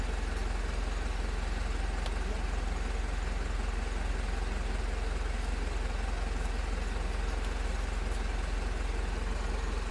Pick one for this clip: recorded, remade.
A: recorded